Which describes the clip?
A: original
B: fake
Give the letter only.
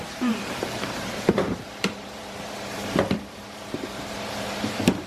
B